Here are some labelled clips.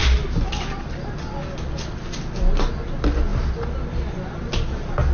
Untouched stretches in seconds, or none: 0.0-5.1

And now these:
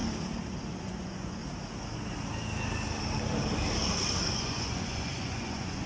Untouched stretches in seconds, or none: 0.0-0.8; 1.4-4.3

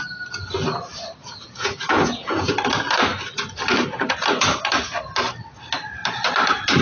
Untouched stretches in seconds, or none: 0.0-1.2; 2.6-6.8

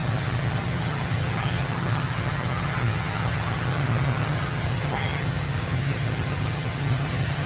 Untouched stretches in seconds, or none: none

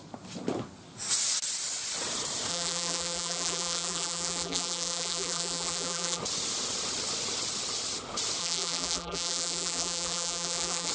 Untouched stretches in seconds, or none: 0.0-2.5; 6.2-8.4